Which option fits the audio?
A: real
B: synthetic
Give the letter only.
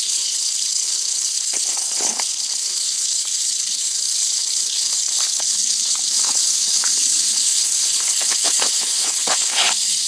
B